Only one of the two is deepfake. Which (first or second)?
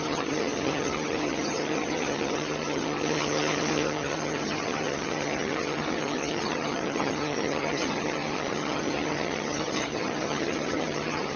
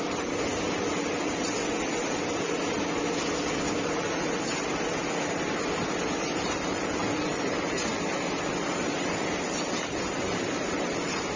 first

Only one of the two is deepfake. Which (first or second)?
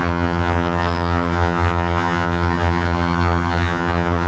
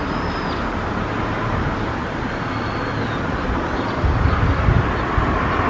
first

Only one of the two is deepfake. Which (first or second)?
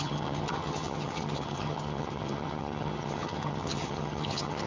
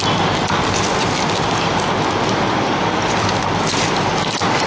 first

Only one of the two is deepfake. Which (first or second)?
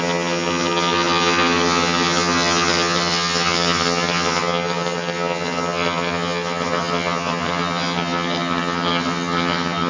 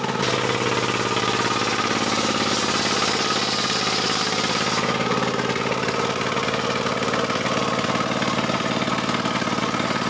first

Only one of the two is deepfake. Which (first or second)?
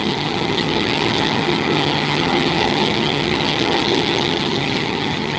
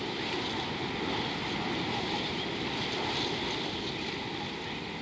first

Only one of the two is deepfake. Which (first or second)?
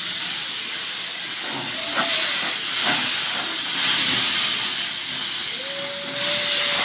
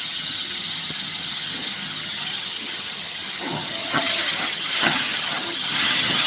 second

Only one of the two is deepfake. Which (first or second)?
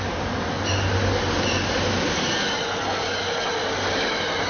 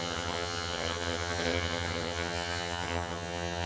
second